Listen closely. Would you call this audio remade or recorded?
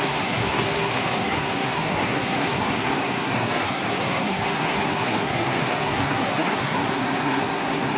remade